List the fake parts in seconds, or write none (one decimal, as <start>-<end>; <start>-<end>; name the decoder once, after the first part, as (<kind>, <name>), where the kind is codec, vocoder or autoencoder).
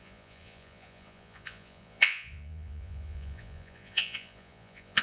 0.0-5.0 (vocoder, Vocos)